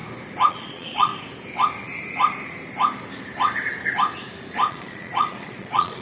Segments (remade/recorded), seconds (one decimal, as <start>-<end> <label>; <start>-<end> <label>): 0.0-0.5 recorded; 0.5-1.1 remade; 1.1-4.7 recorded; 4.7-6.0 remade